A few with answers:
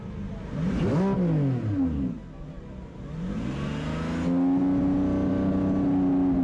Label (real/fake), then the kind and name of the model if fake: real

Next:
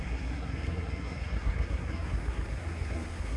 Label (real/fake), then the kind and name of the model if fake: fake, codec, SNAC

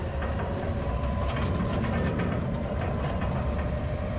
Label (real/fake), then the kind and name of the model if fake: real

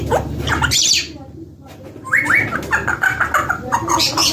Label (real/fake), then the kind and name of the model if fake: real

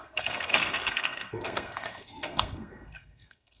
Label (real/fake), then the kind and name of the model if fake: fake, codec, SNAC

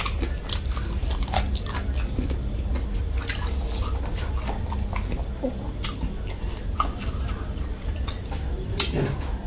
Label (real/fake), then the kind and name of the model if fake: real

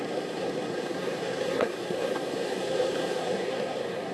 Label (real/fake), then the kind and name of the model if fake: fake, codec, SNAC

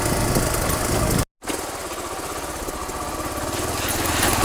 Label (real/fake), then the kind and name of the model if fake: real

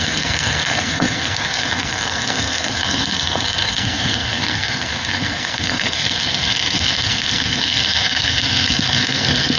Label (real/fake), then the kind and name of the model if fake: fake, codec, SNAC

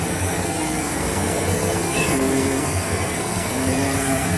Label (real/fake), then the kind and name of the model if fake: fake, codec, SNAC